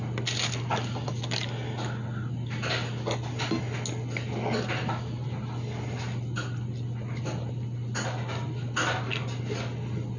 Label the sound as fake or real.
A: real